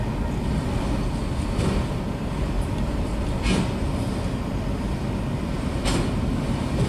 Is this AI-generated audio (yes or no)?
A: no